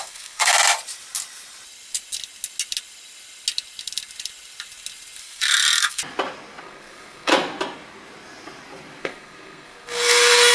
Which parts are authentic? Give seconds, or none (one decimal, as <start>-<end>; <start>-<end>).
0.5-5.2; 6.0-6.6; 7.3-9.0